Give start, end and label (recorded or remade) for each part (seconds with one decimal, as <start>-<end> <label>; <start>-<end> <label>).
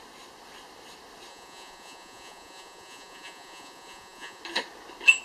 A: 0.0-1.3 recorded; 1.3-4.4 remade; 4.4-5.2 recorded